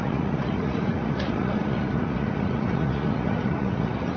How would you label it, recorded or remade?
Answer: remade